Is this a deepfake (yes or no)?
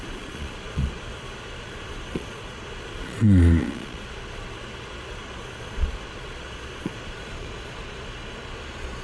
yes